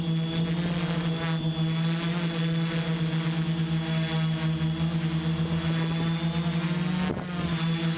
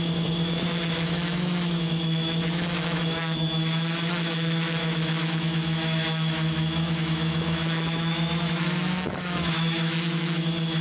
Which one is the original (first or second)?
first